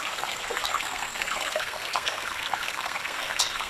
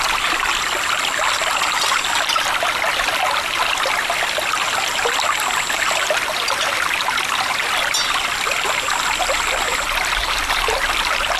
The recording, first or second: second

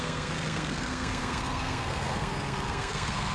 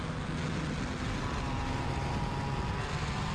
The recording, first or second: second